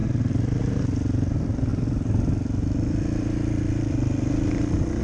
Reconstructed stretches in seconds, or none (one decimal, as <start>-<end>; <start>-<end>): 0.0-0.6; 1.7-5.0